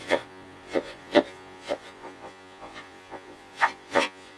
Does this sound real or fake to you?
fake